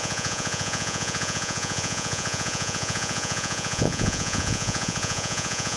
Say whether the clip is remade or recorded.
remade